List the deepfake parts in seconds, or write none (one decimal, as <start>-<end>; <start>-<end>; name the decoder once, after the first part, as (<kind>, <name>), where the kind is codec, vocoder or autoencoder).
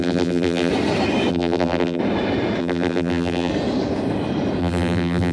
0.0-0.7 (vocoder, BigVGAN v2); 1.3-2.0; 2.6-3.5; 4.6-5.3